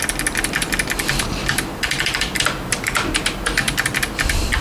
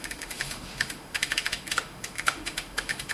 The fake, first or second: second